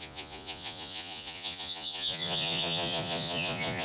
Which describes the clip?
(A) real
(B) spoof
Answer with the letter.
B